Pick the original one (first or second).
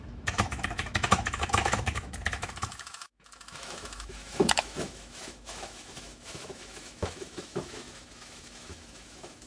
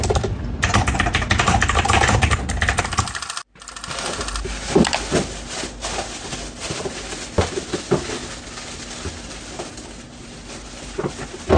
second